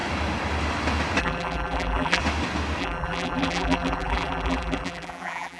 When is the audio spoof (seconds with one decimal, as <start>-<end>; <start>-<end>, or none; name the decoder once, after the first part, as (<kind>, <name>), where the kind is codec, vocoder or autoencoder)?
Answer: 1.2-2.2 (vocoder, BigVGAN v2); 2.8-5.6